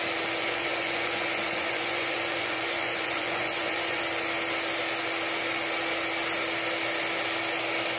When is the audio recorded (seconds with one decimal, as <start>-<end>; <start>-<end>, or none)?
0.0-0.4; 4.0-8.0